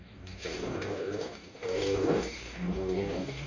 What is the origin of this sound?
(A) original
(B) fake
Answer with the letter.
B